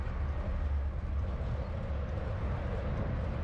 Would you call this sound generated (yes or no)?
no